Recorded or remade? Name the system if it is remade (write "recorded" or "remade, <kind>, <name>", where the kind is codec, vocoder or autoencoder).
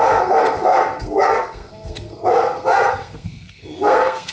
remade, codec, SNAC